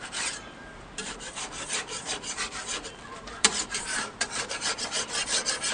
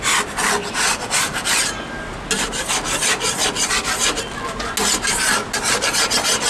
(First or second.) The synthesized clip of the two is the first